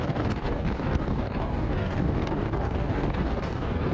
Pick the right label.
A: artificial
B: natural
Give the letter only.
A